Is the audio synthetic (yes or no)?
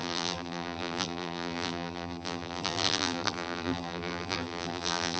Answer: yes